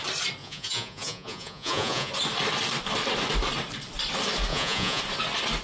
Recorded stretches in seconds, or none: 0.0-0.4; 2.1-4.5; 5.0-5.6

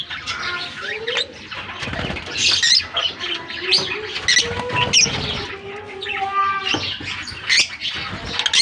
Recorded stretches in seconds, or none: 0.0-8.6